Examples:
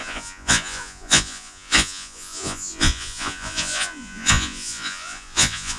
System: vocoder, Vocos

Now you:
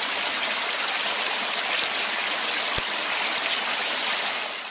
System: none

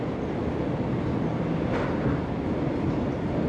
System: none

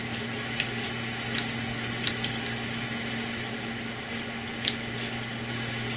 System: none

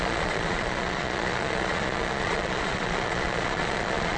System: vocoder, Vocos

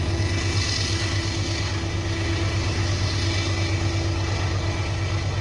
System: none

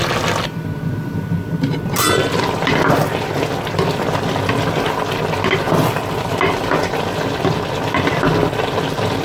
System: none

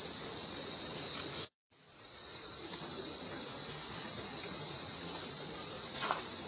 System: vocoder, Vocos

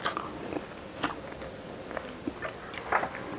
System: none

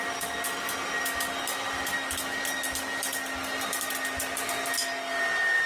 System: none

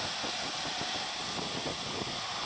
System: none